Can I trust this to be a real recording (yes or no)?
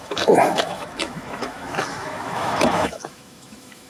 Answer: no